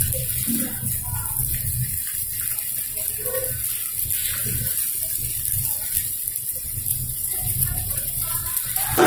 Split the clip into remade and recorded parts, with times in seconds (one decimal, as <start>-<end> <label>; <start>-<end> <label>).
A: 0.0-6.9 recorded; 6.9-8.5 remade; 8.5-9.1 recorded